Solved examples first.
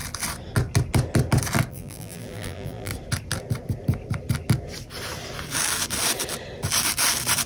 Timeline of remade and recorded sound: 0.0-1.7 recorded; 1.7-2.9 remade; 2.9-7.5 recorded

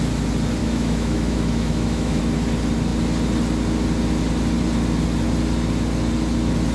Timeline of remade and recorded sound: 0.0-0.6 recorded; 0.6-2.2 remade; 2.2-6.7 recorded

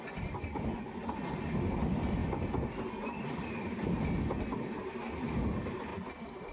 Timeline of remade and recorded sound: 0.0-6.5 recorded

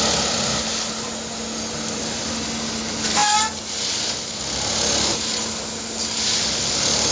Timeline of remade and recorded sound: 0.0-7.1 recorded

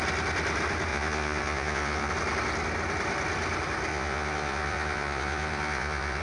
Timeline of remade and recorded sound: 0.0-0.9 recorded; 0.9-2.1 remade; 2.1-3.9 recorded; 3.9-6.2 remade

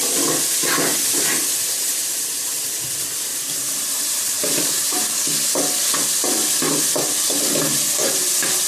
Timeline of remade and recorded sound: 0.0-3.3 recorded; 3.3-5.0 remade; 5.0-8.7 recorded